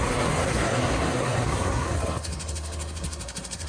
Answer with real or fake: fake